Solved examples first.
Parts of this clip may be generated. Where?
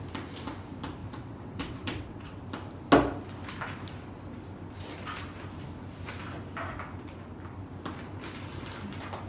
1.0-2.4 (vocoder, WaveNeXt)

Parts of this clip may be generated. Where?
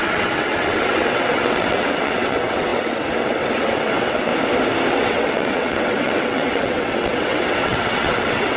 0.0-4.3 (vocoder, WaveNeXt); 4.9-8.6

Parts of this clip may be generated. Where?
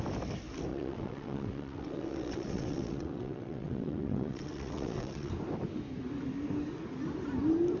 0.7-5.3 (vocoder, WaveNeXt)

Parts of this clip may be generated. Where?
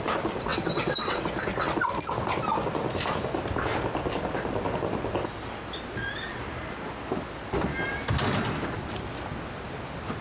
0.5-1.2 (vocoder, WaveNeXt)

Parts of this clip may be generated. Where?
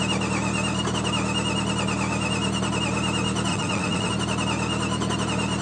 3.5-4.1 (vocoder, WaveNeXt)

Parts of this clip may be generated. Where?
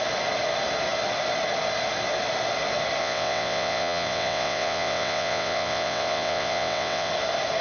3.0-7.1 (vocoder, WaveNeXt)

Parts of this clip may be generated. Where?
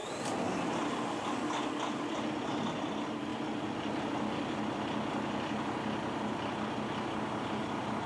none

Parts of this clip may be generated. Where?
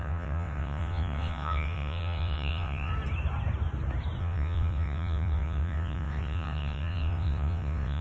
0.0-2.9 (vocoder, WaveNeXt); 4.2-8.0